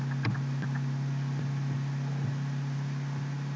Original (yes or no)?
yes